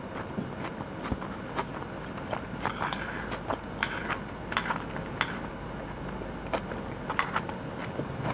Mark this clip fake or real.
real